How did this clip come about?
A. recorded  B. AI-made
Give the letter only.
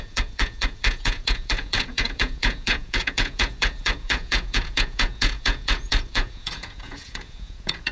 B